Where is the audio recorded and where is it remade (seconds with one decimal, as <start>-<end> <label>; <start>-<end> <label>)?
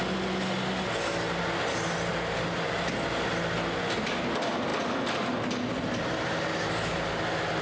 0.0-7.6 recorded